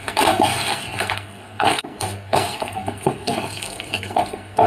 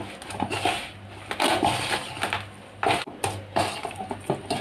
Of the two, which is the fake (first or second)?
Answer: first